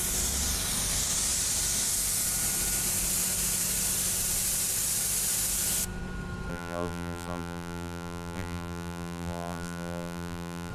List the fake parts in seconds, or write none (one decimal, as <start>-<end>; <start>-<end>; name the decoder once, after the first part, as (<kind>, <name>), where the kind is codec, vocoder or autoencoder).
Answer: 6.5-10.7 (vocoder, BigVGAN v2)